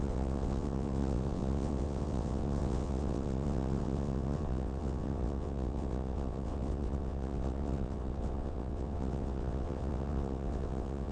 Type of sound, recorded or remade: remade